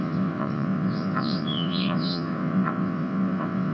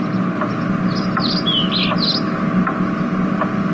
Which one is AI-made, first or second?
first